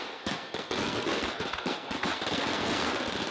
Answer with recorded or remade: remade